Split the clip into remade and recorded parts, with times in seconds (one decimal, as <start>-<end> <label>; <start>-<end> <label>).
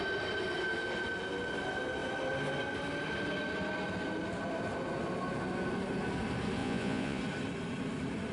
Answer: 0.0-6.6 recorded; 6.6-7.2 remade; 7.2-8.3 recorded